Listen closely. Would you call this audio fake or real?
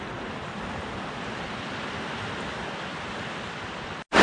real